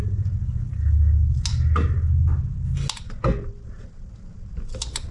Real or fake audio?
real